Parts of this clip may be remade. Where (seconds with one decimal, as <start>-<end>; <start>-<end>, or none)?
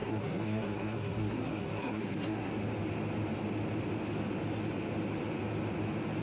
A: 0.0-2.5